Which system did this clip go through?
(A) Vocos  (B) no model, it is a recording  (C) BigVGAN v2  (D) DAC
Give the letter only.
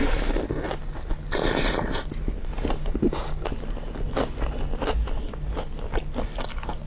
B